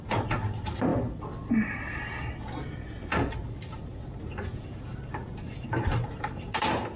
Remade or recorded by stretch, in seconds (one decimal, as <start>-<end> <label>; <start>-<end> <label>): 0.0-7.0 recorded